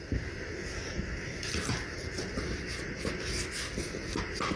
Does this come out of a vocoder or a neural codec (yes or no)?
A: no